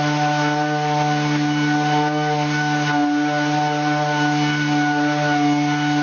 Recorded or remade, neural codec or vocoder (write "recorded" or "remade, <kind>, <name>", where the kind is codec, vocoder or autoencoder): recorded